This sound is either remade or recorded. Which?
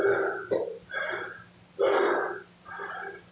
recorded